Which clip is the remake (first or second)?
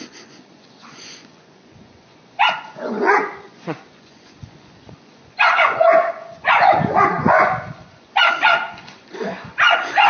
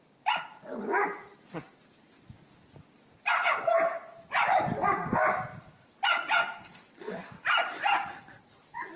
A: first